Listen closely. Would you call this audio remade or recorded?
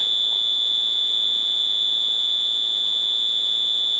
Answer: remade